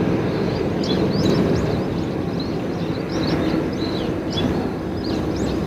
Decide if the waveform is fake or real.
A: real